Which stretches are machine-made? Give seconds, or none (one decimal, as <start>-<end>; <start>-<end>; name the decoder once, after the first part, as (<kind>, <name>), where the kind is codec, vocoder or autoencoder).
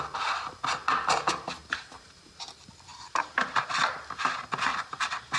1.6-2.4 (vocoder, BigVGAN v2); 2.9-3.9; 4.7-5.4